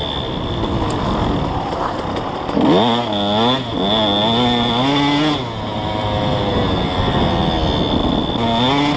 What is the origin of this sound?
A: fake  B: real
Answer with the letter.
B